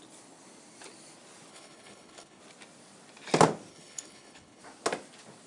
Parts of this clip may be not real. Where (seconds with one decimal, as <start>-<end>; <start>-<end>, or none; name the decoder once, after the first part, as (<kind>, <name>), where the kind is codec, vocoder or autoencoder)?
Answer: 1.5-2.4 (codec, HILCodec); 3.7-4.6